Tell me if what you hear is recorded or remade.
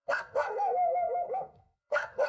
remade